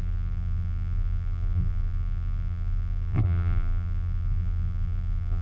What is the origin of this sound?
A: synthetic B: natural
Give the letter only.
A